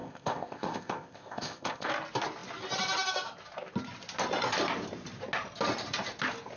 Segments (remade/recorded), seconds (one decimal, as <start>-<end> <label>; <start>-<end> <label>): 0.0-1.9 remade; 1.9-6.6 recorded